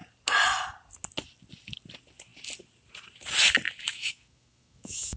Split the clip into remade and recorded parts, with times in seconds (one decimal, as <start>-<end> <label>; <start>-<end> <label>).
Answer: 0.0-3.8 recorded; 3.8-5.2 remade